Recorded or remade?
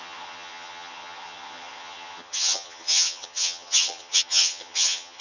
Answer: remade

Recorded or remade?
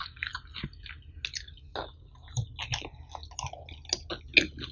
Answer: recorded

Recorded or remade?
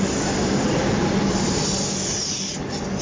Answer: recorded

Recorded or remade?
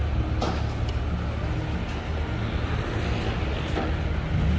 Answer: recorded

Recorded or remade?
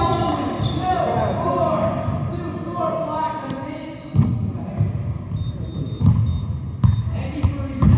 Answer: recorded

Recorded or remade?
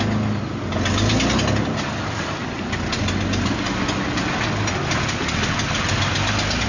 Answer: recorded